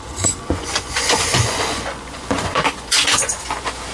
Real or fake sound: fake